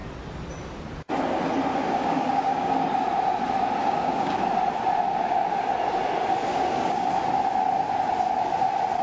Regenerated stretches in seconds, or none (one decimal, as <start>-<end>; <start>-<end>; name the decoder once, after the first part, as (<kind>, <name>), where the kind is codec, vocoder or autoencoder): 1.7-2.7 (codec, DAC); 3.8-4.4; 6.5-7.1